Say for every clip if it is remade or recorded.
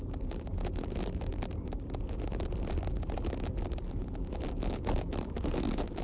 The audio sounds recorded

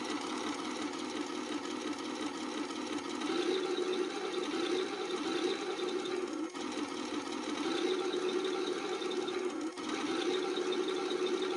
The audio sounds recorded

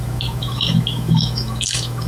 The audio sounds remade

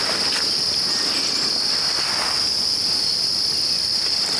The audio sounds recorded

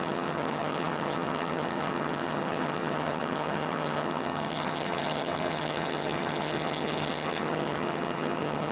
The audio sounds remade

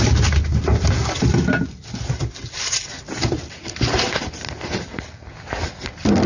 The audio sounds recorded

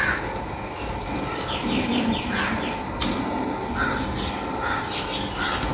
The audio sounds recorded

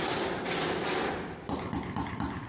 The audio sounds recorded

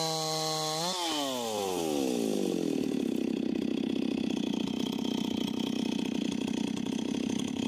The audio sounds recorded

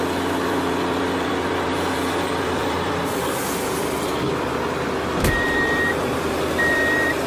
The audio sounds remade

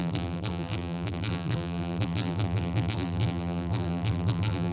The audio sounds remade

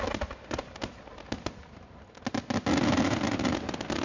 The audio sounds recorded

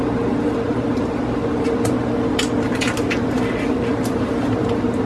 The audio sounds recorded